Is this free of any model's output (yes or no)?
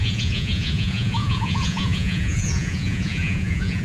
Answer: no